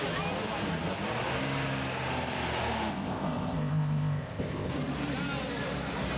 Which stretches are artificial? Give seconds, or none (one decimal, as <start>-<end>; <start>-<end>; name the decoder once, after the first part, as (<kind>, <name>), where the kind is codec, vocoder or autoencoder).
2.9-4.7 (codec, ZipCodec)